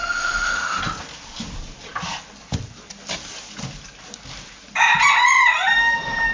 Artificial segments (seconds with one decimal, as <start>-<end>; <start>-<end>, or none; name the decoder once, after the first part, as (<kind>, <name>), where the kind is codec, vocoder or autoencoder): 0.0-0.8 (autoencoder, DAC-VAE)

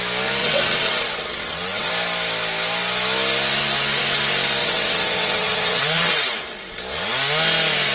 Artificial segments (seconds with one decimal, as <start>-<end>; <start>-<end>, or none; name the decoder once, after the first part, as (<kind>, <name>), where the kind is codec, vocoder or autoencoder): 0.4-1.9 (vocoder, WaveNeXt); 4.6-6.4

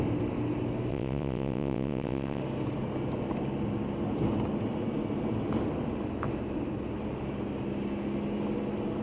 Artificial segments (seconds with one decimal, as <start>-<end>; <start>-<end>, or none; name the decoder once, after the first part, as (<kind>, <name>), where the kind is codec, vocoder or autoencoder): 0.9-2.4 (vocoder, WaveNeXt)

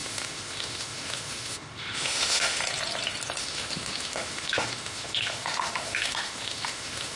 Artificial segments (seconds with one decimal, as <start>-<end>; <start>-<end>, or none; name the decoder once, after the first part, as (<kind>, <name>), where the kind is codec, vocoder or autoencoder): 0.0-2.6 (autoencoder, DAC-VAE); 3.4-7.2

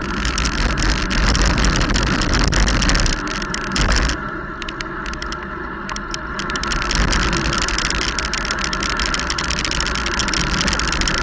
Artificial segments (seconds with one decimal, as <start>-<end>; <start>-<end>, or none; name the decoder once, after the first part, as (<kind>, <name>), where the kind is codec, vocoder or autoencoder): none